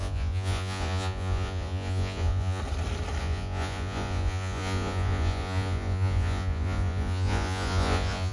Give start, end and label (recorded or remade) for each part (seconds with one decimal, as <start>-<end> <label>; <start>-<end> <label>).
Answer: 0.0-2.6 remade; 2.6-3.2 recorded; 3.2-8.3 remade